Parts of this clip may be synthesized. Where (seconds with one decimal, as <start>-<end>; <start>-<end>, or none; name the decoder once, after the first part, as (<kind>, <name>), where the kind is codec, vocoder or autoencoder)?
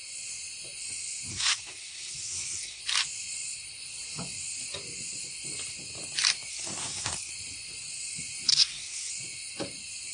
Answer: 1.3-2.8 (codec, SNAC); 6.5-7.3; 8.5-9.1